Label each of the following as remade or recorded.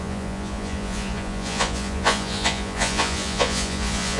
remade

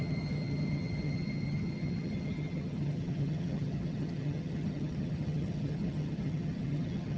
remade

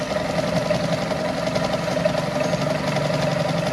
recorded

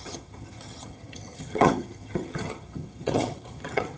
remade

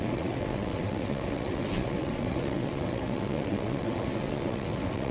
remade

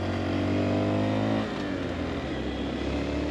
recorded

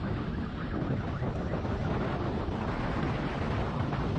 recorded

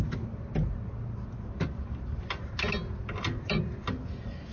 recorded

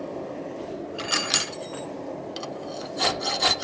remade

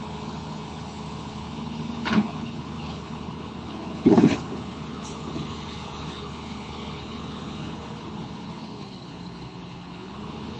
remade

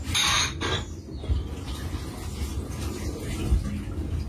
recorded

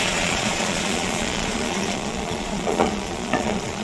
remade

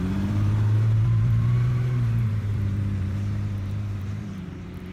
remade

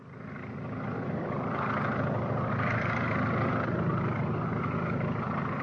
recorded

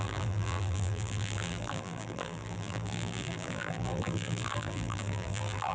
remade